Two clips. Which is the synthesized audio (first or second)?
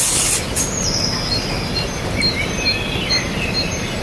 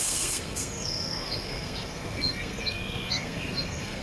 second